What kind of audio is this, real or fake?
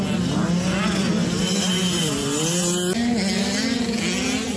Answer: real